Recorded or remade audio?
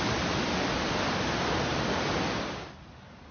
recorded